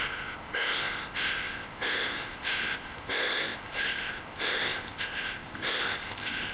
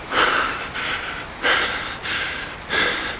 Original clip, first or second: second